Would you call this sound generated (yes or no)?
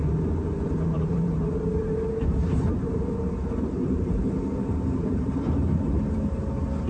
yes